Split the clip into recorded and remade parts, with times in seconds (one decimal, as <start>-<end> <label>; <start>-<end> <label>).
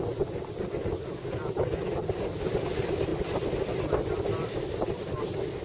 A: 0.0-5.6 recorded